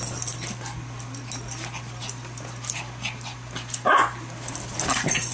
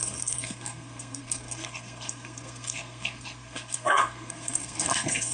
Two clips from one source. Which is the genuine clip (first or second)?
first